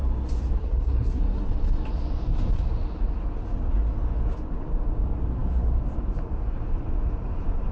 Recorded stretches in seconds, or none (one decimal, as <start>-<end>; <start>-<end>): 0.0-0.6; 1.2-7.7

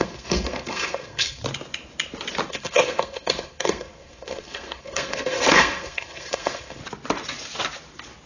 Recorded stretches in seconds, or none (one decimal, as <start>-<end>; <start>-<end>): 1.4-2.5; 6.8-8.3

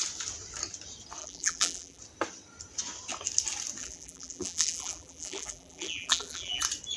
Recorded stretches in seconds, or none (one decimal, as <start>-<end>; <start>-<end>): 0.0-1.2; 2.0-3.8; 6.6-7.0

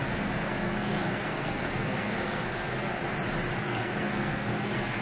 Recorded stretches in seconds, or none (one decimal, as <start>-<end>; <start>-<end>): 3.0-3.6

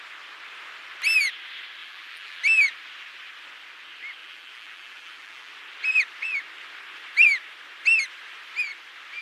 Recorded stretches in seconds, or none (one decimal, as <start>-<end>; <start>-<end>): 0.0-1.8; 2.4-4.2; 5.5-9.2

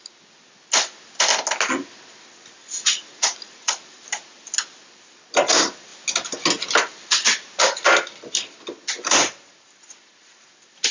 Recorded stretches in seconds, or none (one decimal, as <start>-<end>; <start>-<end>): 0.0-2.6; 4.0-10.9

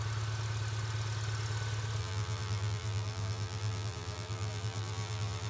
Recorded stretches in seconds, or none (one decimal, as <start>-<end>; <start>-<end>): 0.0-2.0

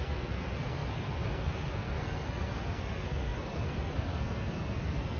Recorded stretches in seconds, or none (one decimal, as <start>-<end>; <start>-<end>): none